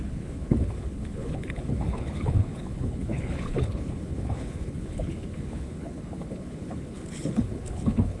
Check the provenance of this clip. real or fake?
fake